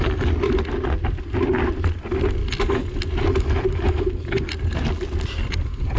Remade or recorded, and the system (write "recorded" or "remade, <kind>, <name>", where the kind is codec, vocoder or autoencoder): recorded